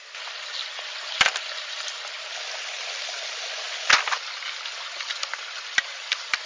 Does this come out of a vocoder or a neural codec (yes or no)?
no